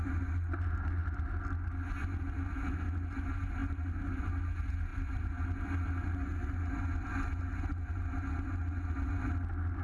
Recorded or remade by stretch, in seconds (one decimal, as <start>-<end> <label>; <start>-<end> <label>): 0.0-9.8 recorded